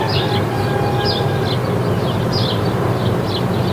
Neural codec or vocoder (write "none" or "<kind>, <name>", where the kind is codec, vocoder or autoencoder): none